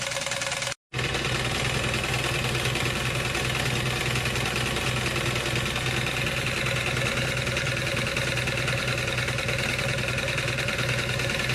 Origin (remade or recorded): recorded